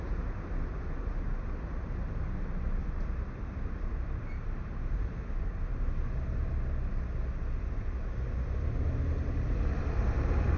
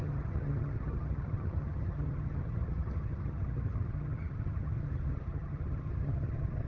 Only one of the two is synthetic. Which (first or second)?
second